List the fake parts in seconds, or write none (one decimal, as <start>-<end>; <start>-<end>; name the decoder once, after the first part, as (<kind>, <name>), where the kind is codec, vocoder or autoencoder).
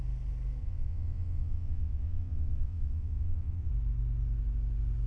0.6-3.7 (vocoder, WaveNeXt)